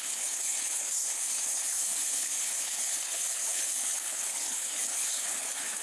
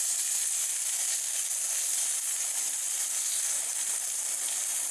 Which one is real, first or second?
second